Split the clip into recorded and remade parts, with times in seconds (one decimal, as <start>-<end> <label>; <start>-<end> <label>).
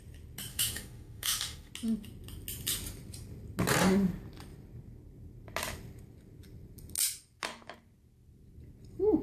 0.0-0.5 recorded; 0.5-1.7 remade; 1.7-9.2 recorded